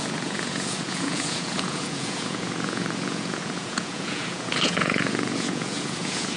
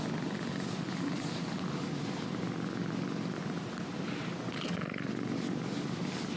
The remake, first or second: first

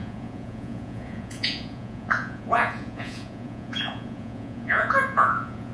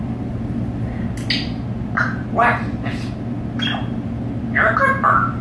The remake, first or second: first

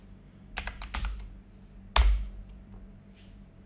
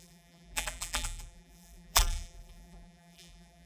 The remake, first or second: second